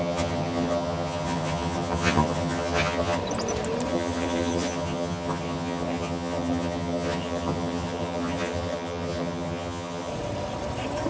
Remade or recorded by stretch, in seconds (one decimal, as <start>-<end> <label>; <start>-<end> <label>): 0.0-3.2 remade; 3.2-3.9 recorded; 3.9-10.1 remade; 10.1-11.1 recorded